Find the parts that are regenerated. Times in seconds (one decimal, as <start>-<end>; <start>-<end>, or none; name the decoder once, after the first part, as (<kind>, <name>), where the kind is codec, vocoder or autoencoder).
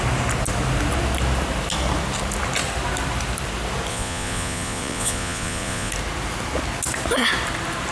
3.9-5.9 (vocoder, Vocos)